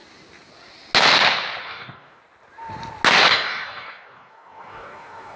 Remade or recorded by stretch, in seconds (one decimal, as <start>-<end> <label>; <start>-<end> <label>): 0.0-1.6 recorded; 1.6-2.2 remade; 2.2-3.3 recorded; 3.3-5.4 remade